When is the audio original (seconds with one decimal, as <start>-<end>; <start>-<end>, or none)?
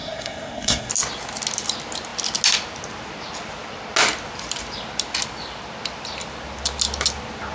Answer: 0.9-7.5